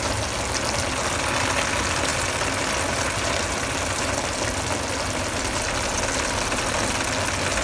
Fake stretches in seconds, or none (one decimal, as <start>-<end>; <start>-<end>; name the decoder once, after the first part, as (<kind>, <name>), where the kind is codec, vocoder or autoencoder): none